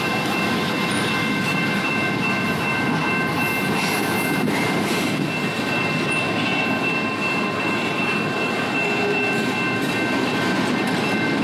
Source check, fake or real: real